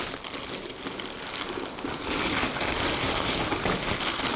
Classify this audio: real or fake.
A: real